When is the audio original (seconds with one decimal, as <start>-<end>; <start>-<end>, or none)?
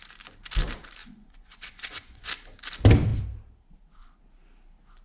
0.0-1.0; 2.3-5.0